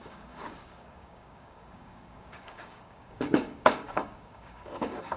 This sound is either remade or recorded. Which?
remade